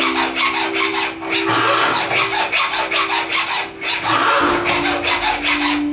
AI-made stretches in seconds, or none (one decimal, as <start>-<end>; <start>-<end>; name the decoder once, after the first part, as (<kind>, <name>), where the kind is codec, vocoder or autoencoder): none

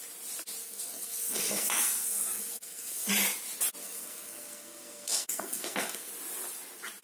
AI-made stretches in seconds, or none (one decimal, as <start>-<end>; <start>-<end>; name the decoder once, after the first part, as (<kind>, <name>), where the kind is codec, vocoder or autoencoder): 0.6-3.1 (codec, SNAC); 3.8-6.1

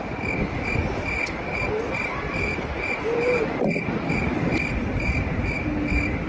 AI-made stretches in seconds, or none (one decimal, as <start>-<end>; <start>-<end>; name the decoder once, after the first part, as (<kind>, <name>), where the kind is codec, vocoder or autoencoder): none

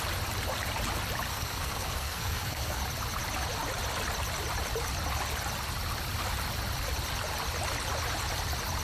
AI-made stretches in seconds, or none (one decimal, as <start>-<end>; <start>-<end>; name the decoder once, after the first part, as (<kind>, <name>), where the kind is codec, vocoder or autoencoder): 1.3-2.8 (codec, SNAC)